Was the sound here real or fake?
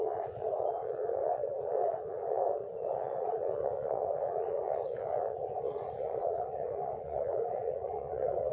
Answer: fake